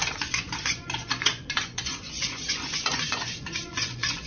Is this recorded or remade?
remade